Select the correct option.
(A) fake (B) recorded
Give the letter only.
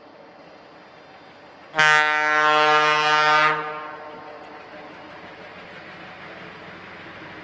B